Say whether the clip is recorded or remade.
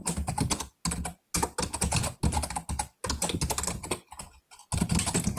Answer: recorded